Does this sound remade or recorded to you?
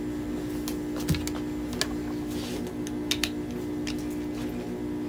recorded